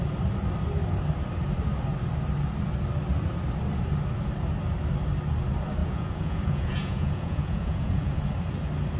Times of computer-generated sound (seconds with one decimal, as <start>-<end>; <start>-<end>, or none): 5.8-8.1